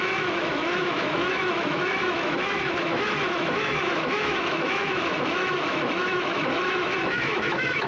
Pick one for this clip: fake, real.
fake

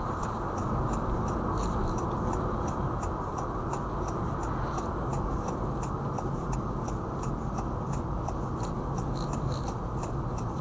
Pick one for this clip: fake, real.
real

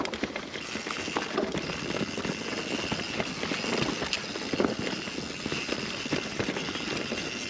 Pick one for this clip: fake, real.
real